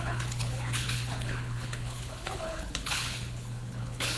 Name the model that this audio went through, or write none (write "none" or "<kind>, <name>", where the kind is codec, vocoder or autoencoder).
codec, HILCodec